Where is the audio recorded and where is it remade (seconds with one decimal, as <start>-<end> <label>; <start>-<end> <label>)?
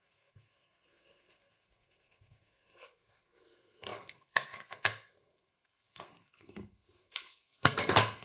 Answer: 0.0-8.2 remade